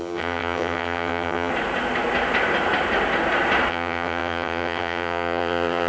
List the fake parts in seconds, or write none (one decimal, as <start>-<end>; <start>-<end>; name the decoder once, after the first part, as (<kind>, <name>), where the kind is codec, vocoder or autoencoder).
0.0-1.5 (vocoder, HiFi-GAN); 3.7-5.9